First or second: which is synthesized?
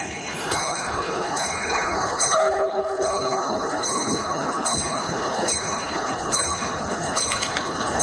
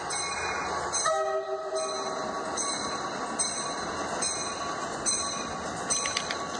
first